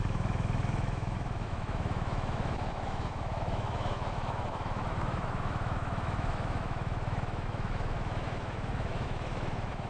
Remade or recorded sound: remade